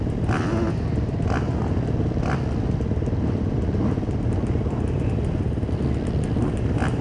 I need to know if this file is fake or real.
real